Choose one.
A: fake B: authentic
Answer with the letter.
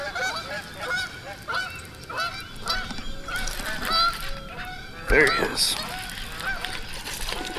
B